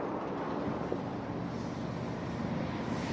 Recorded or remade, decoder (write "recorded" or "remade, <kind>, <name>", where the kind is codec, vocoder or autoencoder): recorded